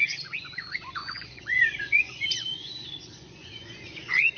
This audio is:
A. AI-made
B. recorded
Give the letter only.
A